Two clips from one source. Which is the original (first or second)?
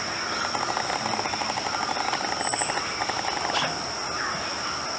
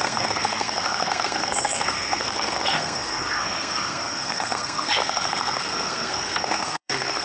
first